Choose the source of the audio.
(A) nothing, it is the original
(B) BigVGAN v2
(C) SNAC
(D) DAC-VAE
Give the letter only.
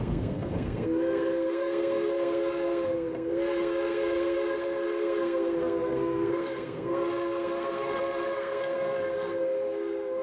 C